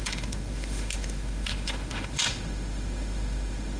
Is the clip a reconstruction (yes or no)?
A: yes